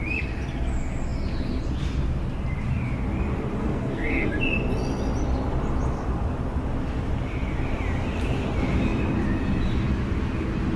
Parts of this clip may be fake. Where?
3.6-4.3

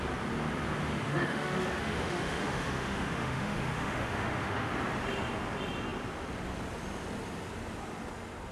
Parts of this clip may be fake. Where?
0.9-4.7

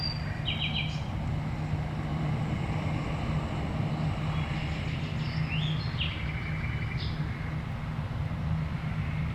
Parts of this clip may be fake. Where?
2.1-3.9

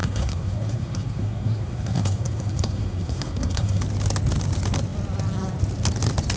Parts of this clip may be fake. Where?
0.0-3.8

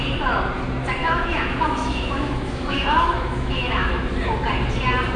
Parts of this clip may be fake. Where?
1.0-4.1

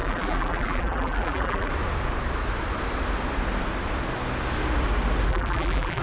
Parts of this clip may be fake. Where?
0.0-1.7; 5.3-6.0

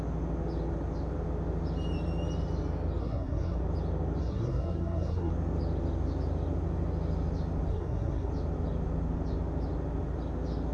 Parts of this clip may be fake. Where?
3.0-3.6; 4.2-5.3; 7.7-8.3